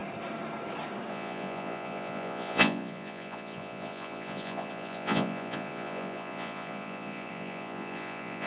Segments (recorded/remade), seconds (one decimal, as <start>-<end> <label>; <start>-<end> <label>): 0.0-1.1 recorded; 1.1-8.5 remade